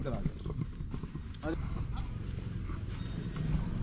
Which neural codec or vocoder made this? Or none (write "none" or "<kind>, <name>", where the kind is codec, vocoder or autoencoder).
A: none